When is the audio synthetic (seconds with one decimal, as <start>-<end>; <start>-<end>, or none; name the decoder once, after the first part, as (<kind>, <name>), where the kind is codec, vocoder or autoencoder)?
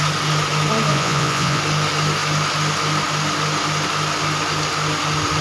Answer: 0.9-1.6 (vocoder, Vocos)